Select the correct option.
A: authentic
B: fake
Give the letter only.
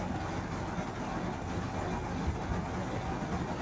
A